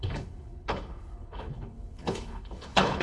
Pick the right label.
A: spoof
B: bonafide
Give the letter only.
A